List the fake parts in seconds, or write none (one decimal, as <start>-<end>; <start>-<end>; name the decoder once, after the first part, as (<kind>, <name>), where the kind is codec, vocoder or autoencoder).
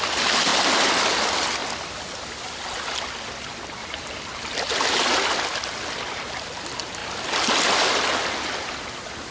none